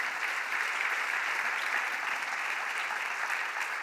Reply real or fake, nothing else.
real